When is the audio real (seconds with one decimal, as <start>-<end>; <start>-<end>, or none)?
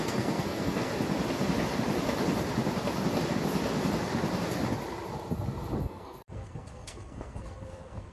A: 0.9-5.8